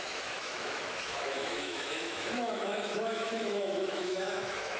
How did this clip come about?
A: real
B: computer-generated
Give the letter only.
B